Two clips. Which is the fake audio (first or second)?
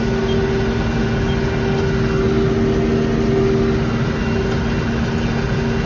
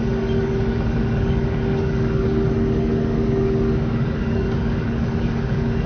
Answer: second